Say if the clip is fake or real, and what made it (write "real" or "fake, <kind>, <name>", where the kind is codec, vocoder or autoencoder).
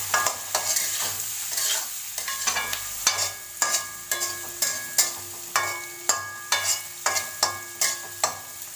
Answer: real